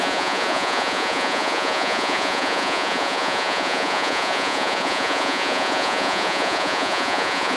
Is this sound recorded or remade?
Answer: remade